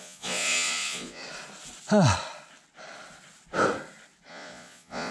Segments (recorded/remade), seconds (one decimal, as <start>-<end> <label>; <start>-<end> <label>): 0.0-1.2 remade; 1.2-4.3 recorded; 4.3-5.1 remade